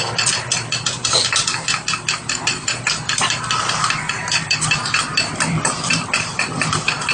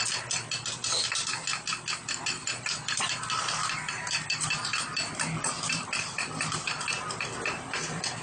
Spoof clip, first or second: first